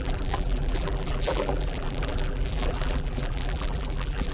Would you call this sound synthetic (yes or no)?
yes